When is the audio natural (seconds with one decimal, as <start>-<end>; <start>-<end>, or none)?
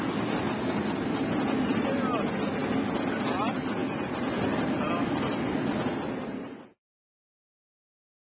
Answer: 0.0-8.3